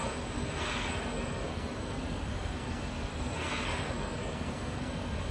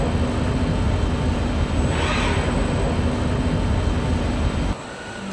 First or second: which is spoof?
first